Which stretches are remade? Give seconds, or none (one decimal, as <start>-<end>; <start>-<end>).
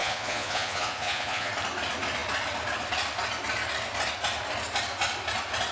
0.0-1.5